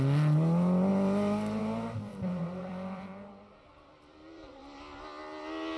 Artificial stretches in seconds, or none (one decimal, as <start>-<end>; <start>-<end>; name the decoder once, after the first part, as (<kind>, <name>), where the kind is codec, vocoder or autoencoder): 0.9-1.6 (vocoder, BigVGAN v2); 2.1-4.6